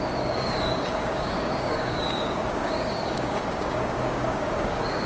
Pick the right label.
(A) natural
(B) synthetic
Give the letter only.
B